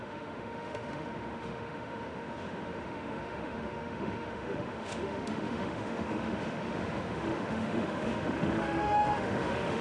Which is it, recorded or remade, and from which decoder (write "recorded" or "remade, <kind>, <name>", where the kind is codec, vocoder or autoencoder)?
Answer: remade, autoencoder, DAC-VAE